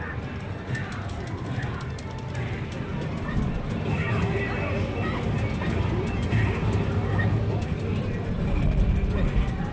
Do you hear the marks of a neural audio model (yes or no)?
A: no